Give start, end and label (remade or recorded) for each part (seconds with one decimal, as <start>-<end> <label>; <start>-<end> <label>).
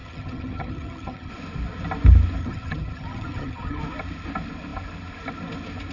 0.0-1.3 remade; 1.3-2.4 recorded; 2.4-3.8 remade; 3.8-5.9 recorded